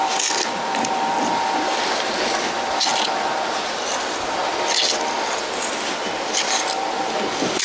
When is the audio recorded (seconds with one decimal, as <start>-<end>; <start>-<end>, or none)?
0.0-7.6

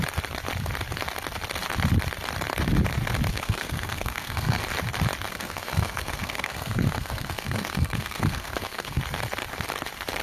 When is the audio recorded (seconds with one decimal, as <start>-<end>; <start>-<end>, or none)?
0.0-3.3; 4.6-5.3; 9.0-10.2